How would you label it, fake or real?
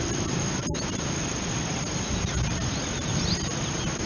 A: real